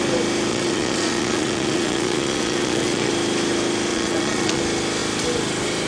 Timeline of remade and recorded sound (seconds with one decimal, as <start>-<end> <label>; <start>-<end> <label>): 0.0-0.5 recorded; 0.5-3.1 remade; 3.1-3.9 recorded; 3.9-4.6 remade; 4.6-5.9 recorded